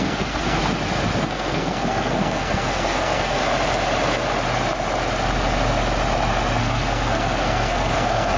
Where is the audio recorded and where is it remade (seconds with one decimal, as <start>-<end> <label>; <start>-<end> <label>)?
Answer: 0.0-0.6 remade; 0.6-1.2 recorded; 1.2-3.4 remade; 3.4-6.6 recorded; 6.6-8.4 remade